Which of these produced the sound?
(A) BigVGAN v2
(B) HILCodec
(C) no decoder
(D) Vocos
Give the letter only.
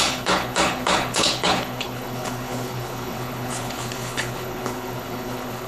B